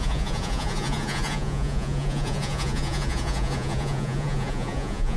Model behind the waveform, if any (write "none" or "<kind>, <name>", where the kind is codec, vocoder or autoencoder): vocoder, Vocos